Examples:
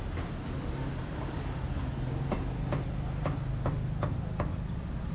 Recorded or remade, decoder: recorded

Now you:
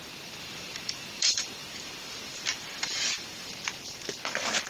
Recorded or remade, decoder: remade, vocoder, BigVGAN v2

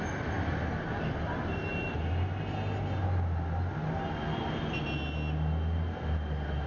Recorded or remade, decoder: recorded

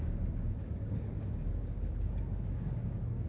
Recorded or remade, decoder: remade, codec, DAC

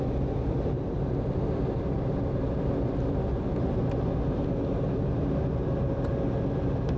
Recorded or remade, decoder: recorded